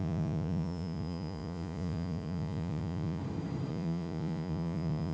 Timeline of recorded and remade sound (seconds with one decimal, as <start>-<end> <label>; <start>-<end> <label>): 0.0-3.2 remade; 3.2-3.7 recorded; 3.7-5.1 remade